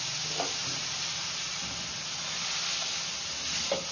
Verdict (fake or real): real